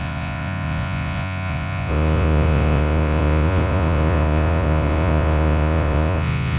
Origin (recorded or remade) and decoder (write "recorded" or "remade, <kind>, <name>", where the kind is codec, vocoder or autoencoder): remade, vocoder, Vocos